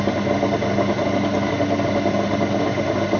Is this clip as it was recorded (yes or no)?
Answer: yes